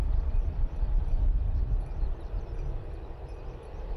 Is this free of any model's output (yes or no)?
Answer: yes